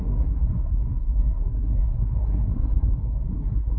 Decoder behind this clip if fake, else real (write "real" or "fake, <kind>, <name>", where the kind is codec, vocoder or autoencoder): fake, codec, SNAC